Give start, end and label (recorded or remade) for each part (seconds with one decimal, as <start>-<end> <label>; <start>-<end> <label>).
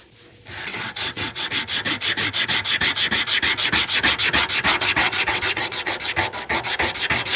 0.0-0.7 recorded; 0.7-1.5 remade; 1.5-4.7 recorded; 4.7-5.9 remade; 5.9-7.4 recorded